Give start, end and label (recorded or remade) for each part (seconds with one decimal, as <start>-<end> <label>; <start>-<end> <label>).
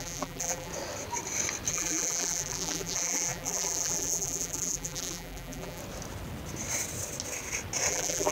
0.0-0.7 remade; 0.7-1.7 recorded; 1.7-5.8 remade; 5.8-7.9 recorded; 7.9-8.3 remade